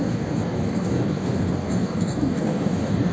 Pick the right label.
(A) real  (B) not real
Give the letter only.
B